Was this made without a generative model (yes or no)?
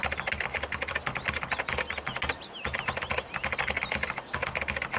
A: yes